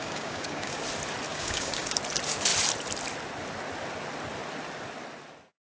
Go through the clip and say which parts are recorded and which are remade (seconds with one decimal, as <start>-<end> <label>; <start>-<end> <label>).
0.0-0.8 remade; 0.8-1.3 recorded; 1.3-2.0 remade; 2.0-5.8 recorded